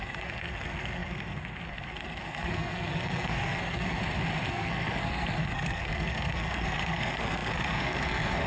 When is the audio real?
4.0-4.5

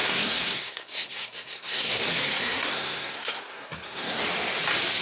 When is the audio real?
2.0-2.4; 4.2-5.0

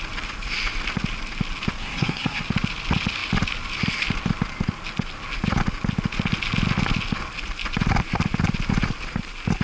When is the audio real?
0.0-1.8; 2.4-9.6

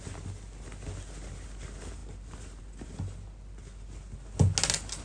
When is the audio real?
0.0-5.0

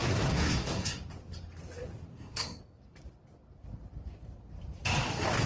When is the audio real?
1.0-2.1; 2.6-5.5